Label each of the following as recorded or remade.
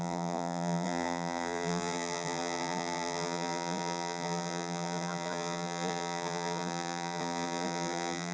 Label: remade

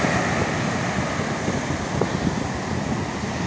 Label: recorded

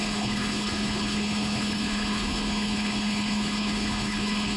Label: remade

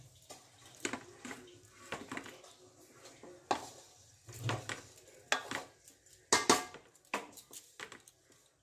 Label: recorded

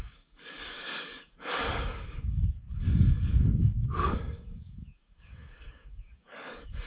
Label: remade